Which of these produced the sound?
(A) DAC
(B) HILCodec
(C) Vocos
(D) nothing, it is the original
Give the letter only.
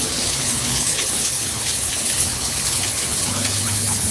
B